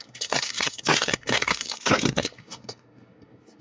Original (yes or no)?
no